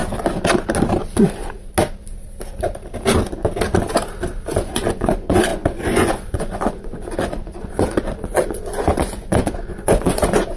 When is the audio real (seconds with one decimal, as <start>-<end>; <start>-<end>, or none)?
0.0-4.5